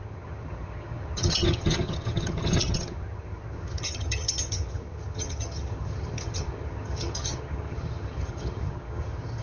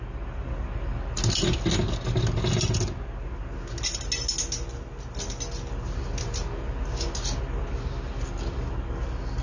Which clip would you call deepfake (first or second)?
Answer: first